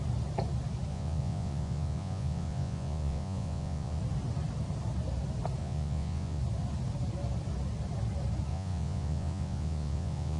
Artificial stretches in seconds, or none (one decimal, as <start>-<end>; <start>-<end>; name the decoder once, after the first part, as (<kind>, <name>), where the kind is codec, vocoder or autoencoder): 0.9-4.0 (vocoder, Vocos); 5.6-6.4; 8.5-10.4